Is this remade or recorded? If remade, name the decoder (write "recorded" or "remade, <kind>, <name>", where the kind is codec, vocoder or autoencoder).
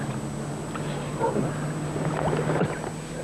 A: recorded